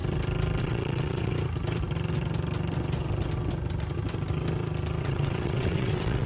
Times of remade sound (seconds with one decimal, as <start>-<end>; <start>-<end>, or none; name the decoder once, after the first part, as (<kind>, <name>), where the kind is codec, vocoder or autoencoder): 0.6-1.3 (vocoder, WaveNeXt); 5.0-6.3